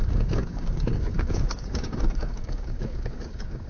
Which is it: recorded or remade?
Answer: remade